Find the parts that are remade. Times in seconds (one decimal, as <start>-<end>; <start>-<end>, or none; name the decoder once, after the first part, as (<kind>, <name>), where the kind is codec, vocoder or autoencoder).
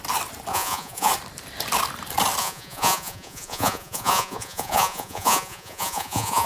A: 0.5-1.1 (vocoder, Vocos); 2.4-6.5